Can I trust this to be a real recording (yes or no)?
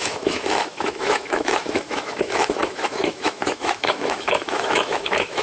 no